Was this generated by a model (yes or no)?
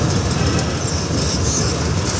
no